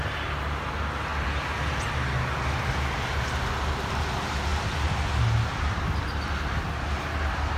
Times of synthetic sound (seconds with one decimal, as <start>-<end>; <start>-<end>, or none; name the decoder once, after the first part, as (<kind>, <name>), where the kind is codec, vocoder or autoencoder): none